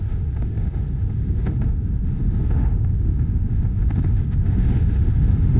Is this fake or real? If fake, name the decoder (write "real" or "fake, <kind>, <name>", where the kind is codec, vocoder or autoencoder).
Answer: fake, autoencoder, DAC-VAE